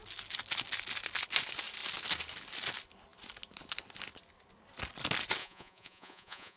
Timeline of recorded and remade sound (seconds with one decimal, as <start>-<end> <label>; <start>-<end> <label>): 0.0-5.4 recorded; 5.4-6.6 remade